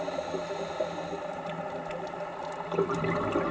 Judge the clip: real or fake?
real